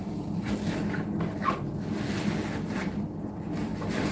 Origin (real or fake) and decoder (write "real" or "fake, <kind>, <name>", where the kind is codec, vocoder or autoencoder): real